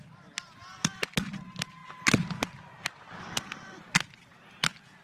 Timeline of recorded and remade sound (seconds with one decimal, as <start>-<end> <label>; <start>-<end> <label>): 0.0-5.0 recorded